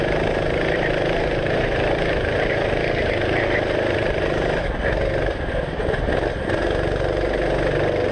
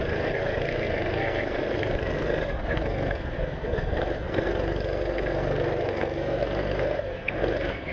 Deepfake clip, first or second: second